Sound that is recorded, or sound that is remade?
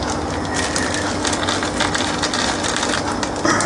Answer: recorded